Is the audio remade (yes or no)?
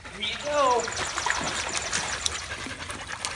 no